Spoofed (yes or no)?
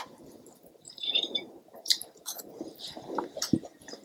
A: yes